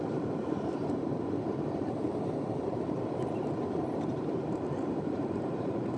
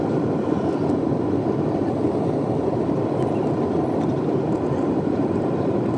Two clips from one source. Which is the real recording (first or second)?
second